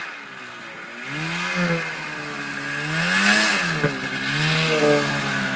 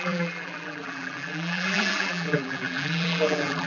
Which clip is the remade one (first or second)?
second